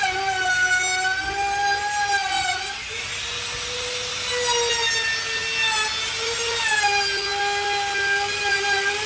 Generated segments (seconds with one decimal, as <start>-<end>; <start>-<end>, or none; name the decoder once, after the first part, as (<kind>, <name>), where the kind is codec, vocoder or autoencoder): 2.2-3.1 (vocoder, Vocos)